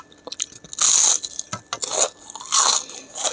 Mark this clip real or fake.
real